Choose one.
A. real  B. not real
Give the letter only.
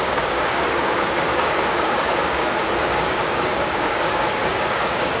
B